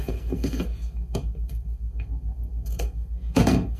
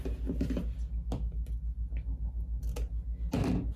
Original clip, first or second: second